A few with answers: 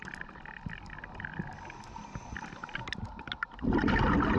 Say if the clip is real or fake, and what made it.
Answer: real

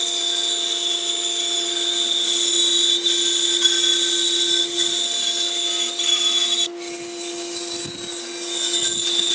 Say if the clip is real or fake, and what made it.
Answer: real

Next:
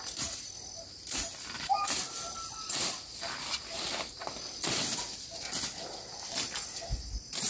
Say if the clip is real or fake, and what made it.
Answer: real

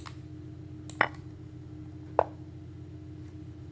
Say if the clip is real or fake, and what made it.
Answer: real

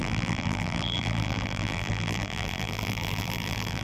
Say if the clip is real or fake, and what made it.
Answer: fake, vocoder, BigVGAN v2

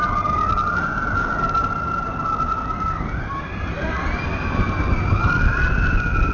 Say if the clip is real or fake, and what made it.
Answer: real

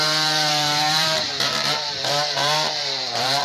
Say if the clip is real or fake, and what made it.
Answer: fake, vocoder, BigVGAN v2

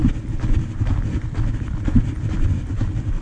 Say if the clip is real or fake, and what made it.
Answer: real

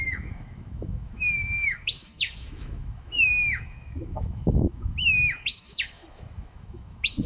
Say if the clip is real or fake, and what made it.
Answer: fake, autoencoder, DAC-VAE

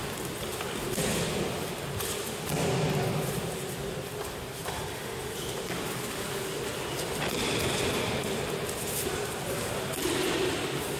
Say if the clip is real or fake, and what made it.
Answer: real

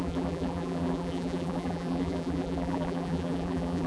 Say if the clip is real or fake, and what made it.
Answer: fake, vocoder, BigVGAN v2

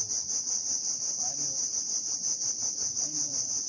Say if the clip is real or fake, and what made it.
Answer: fake, vocoder, BigVGAN v2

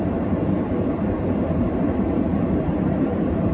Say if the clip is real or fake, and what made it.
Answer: fake, vocoder, BigVGAN v2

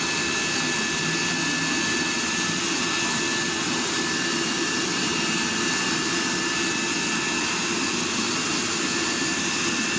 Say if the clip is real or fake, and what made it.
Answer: real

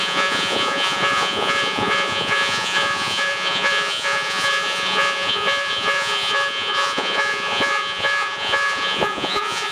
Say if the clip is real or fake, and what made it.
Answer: fake, vocoder, Vocos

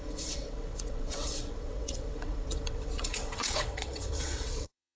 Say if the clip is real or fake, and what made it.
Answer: fake, vocoder, WaveNeXt